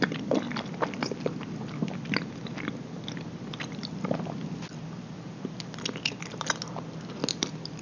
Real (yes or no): yes